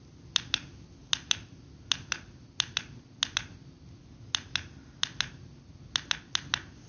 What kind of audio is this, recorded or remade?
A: recorded